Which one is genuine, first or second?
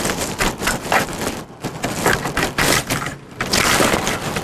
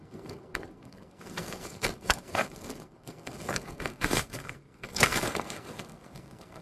first